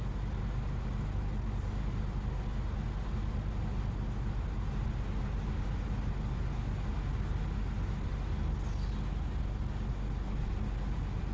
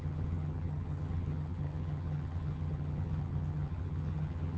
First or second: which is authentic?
first